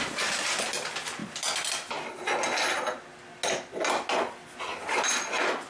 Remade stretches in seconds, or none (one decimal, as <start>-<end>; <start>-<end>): none